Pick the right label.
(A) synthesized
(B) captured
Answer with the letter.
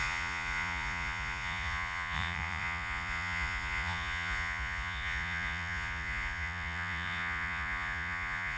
A